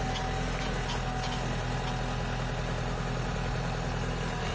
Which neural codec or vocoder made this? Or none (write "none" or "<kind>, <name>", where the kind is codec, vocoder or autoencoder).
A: none